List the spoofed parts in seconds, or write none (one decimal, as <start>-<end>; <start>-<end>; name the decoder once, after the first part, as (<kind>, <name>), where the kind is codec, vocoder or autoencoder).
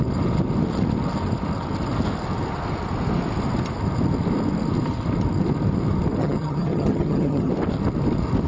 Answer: 6.2-7.5 (vocoder, HiFi-GAN)